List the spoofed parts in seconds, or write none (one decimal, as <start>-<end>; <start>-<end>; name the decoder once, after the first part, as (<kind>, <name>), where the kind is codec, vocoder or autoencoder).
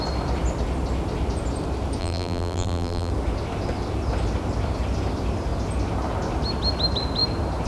2.0-3.1 (vocoder, BigVGAN v2)